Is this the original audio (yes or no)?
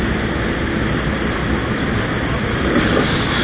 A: yes